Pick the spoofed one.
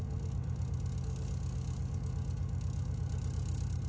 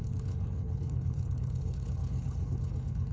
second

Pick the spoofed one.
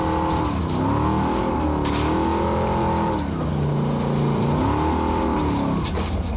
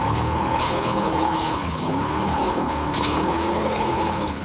second